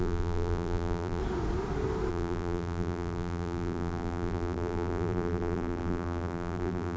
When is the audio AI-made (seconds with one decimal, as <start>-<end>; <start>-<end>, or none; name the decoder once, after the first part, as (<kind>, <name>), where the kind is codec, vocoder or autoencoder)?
0.0-1.2 (vocoder, BigVGAN v2); 2.1-7.0